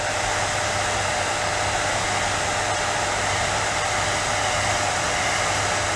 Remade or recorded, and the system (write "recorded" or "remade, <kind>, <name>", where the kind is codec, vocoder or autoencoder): recorded